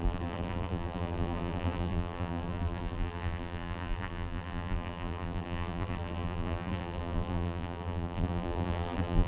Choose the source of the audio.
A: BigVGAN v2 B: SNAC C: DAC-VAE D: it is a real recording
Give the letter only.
A